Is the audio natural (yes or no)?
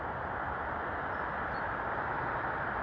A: yes